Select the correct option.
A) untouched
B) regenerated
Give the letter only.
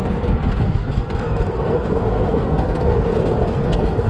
B